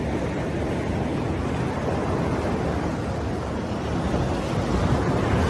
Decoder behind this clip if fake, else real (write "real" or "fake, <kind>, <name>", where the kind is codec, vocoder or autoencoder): real